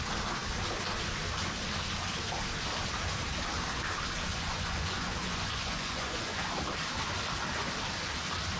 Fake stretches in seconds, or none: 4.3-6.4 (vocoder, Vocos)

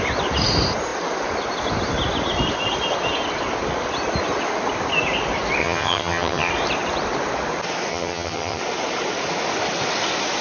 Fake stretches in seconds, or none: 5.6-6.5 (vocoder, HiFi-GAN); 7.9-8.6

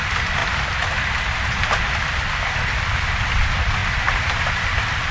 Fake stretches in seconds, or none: 0.0-0.4 (vocoder, BigVGAN v2); 1.9-3.8; 4.5-5.1